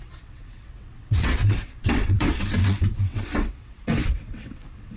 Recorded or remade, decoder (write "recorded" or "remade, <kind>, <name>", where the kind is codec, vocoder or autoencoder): remade, vocoder, WaveNeXt